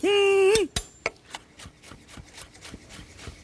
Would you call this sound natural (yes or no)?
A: yes